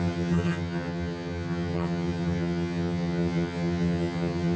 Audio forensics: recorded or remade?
remade